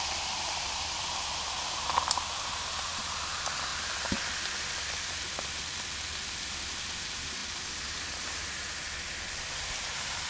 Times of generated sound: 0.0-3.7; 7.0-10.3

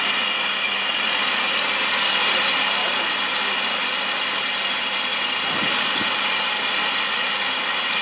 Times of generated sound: none

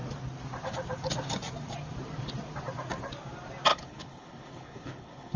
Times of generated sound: 3.7-5.4

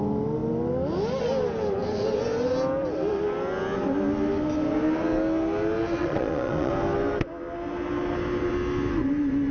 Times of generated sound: 6.0-6.7

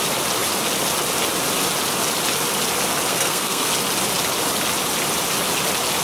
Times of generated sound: 3.1-3.7

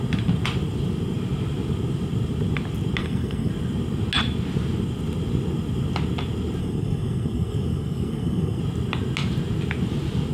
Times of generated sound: 3.0-3.5; 6.6-8.6

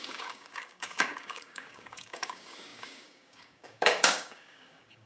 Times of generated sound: 0.0-5.1